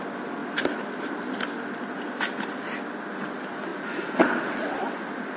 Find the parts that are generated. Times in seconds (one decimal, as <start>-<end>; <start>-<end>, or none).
none